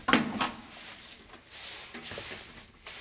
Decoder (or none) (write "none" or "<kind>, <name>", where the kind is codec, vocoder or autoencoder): none